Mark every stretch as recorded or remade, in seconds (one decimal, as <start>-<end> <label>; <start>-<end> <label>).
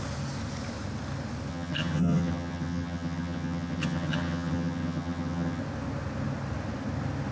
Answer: 0.0-1.5 recorded; 1.5-5.6 remade; 5.6-7.3 recorded